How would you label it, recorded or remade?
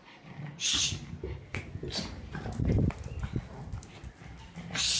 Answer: recorded